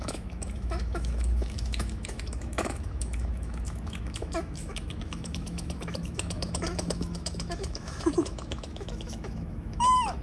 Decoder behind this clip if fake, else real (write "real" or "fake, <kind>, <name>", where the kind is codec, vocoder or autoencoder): fake, autoencoder, DAC-VAE